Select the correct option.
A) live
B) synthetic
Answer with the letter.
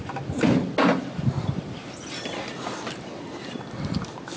A